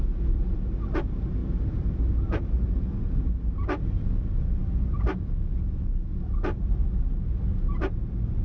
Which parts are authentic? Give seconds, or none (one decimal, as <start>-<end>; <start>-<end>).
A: 0.0-8.4